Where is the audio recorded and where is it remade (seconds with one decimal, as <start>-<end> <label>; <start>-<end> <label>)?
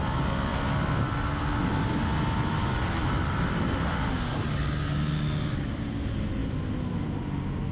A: 0.0-7.7 recorded